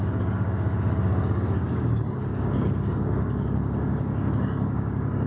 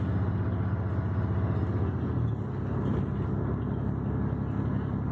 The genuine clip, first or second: second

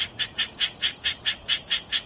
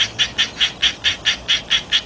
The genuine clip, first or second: second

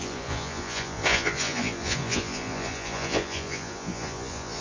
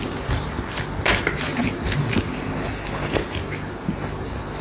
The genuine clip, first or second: second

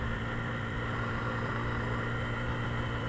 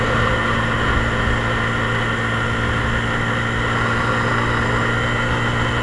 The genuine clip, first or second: second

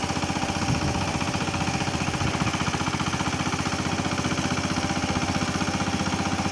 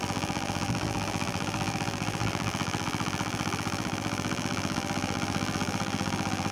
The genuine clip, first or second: first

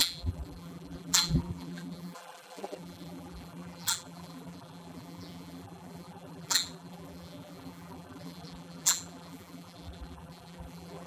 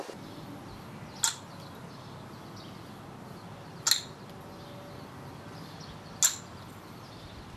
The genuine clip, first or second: second